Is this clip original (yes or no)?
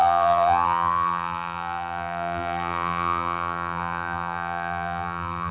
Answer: no